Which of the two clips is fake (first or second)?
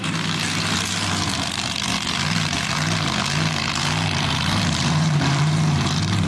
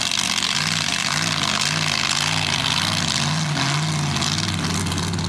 first